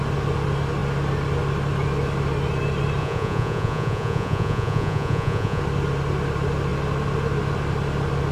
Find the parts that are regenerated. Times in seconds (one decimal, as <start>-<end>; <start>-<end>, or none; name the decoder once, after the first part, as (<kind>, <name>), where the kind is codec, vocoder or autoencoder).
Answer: 3.0-5.6 (vocoder, Vocos)